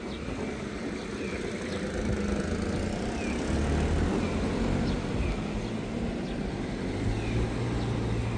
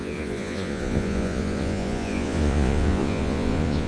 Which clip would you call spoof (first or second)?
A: second